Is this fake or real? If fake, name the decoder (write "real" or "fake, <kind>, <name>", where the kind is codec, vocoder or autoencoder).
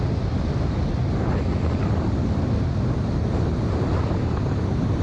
real